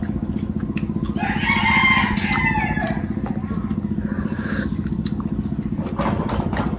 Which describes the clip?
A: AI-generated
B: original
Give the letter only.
B